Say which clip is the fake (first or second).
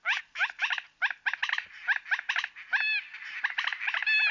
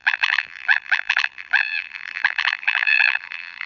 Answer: second